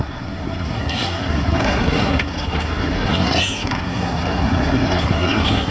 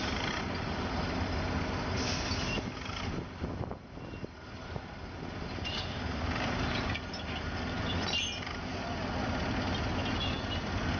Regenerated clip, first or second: first